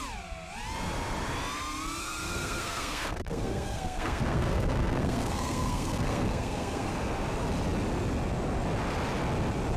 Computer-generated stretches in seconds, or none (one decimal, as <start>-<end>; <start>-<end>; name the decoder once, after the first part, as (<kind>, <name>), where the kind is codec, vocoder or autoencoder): 2.0-6.9 (codec, SNAC)

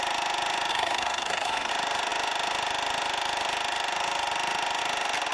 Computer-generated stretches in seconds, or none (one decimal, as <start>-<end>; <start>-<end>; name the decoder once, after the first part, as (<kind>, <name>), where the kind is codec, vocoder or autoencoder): 0.7-1.7 (codec, SNAC)

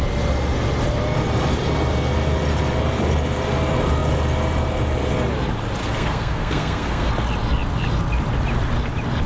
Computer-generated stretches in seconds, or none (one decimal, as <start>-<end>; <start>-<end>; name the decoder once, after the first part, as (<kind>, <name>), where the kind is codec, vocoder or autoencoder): 5.8-7.1 (codec, SNAC)

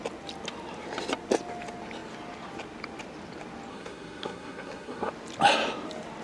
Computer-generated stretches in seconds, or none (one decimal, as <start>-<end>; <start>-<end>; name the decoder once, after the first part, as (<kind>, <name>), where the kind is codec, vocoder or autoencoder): 3.7-5.1 (codec, SNAC)

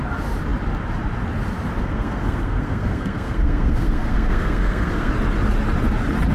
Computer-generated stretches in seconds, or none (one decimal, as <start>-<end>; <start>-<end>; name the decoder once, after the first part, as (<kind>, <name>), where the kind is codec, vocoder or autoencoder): 1.8-5.1 (codec, SNAC)